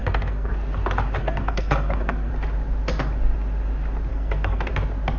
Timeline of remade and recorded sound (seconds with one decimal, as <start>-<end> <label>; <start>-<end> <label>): 0.0-0.5 remade; 0.5-1.2 recorded; 1.2-2.3 remade; 2.3-4.1 recorded; 4.1-4.7 remade; 4.7-5.2 recorded